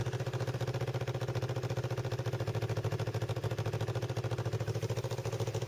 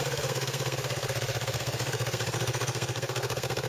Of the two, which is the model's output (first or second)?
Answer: second